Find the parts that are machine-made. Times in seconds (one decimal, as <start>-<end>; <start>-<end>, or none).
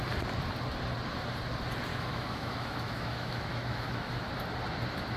1.9-4.3